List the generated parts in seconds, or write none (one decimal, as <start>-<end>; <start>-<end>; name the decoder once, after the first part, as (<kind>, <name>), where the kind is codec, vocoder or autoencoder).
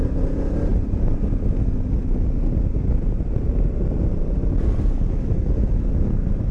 0.7-1.3 (vocoder, BigVGAN v2)